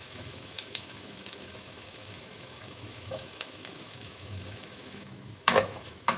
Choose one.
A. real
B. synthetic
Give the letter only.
B